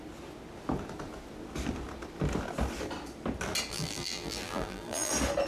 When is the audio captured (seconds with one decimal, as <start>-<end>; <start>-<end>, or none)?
0.0-3.7; 5.1-5.5